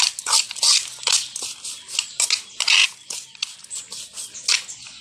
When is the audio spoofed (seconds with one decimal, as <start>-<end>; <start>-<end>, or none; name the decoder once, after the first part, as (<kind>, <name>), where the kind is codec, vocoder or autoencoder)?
none